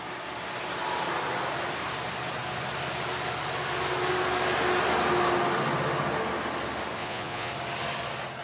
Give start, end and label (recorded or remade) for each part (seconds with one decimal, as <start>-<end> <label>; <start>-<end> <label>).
0.0-7.0 recorded; 7.0-7.5 remade; 7.5-8.4 recorded